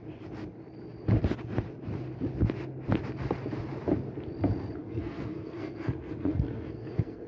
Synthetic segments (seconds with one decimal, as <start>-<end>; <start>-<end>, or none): 4.8-7.3